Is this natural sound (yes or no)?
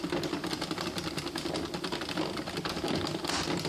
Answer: yes